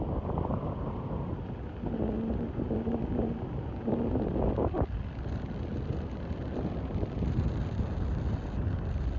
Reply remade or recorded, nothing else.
recorded